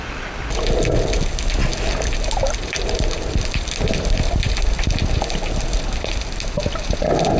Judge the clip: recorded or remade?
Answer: recorded